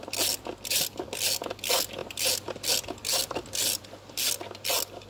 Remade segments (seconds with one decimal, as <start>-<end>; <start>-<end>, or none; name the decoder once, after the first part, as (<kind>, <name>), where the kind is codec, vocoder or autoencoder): 3.1-3.8 (vocoder, BigVGAN v2)